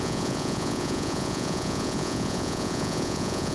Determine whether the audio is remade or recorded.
remade